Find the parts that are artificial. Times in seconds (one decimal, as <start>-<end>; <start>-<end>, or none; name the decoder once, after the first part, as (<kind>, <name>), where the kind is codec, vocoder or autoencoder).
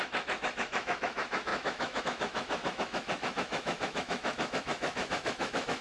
0.0-5.8 (autoencoder, DAC-VAE)